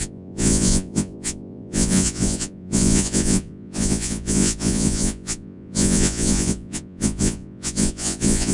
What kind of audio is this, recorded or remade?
remade